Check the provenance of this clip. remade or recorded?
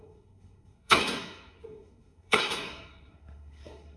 remade